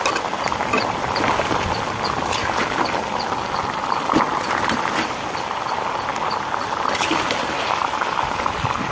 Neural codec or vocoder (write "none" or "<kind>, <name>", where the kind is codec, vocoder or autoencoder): none